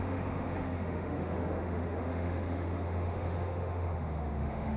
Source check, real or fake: fake